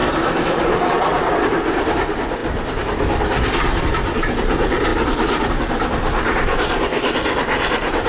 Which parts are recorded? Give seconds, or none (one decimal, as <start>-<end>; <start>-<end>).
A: 0.0-8.1